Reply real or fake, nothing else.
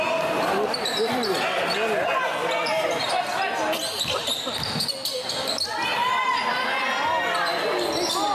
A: real